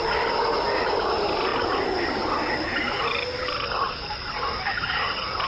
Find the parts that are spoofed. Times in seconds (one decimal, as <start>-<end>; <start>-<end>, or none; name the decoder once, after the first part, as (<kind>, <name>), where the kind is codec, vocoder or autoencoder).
none